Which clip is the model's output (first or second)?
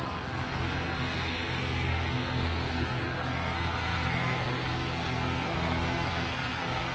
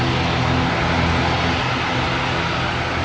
first